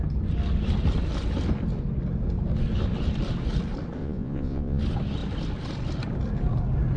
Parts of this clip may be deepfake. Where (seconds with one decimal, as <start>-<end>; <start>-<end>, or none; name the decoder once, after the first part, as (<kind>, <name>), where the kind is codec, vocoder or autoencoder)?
4.0-4.8 (vocoder, Vocos)